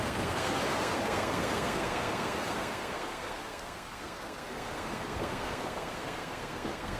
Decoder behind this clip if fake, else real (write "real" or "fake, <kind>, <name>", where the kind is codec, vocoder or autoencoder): fake, codec, SNAC